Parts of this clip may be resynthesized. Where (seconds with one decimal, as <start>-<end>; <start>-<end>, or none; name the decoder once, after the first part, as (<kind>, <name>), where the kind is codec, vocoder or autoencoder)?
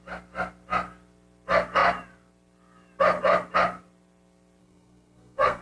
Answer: 4.6-5.6 (codec, SNAC)